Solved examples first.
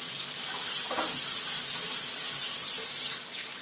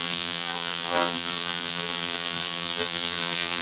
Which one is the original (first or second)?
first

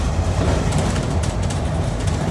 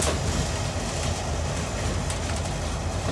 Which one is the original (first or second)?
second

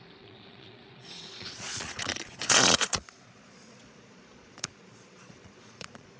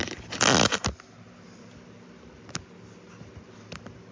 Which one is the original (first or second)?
second